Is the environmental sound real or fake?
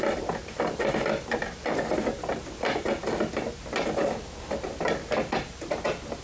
real